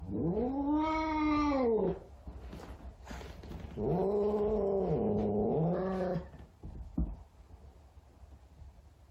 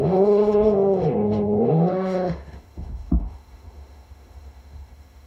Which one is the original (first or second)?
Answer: first